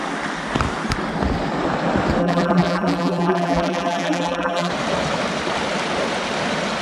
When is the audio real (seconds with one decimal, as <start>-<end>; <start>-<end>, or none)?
0.0-2.2; 4.7-6.8